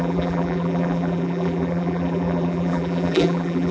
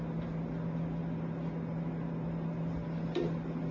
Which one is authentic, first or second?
second